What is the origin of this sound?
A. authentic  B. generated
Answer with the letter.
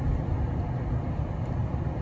A